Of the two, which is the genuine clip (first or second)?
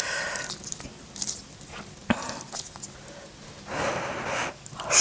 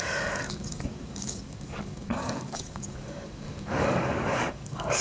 first